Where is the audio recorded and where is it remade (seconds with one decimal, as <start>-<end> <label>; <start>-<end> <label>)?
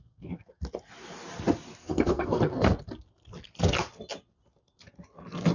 0.0-0.6 remade; 0.6-1.8 recorded; 1.8-2.8 remade; 2.8-5.5 recorded